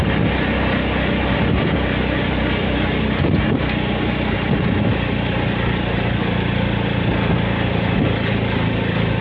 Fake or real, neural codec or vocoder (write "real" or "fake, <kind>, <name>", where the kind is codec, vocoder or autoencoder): real